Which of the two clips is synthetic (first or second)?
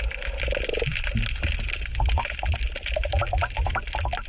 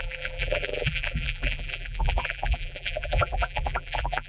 second